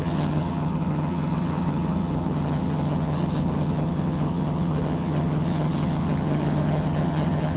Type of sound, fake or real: fake